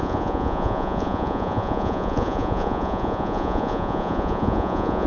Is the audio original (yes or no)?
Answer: no